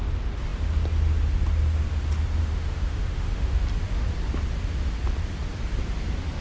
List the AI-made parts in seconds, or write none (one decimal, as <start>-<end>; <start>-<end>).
2.4-3.6